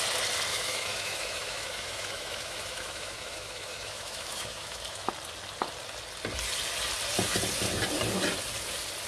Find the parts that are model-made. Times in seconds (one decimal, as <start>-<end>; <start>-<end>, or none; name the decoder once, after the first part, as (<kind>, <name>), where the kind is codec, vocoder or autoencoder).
0.5-5.1 (autoencoder, DAC-VAE)